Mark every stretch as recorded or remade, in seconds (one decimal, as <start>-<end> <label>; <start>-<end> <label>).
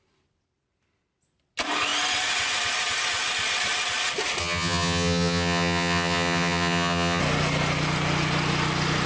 0.0-4.4 recorded; 4.4-7.2 remade; 7.2-9.1 recorded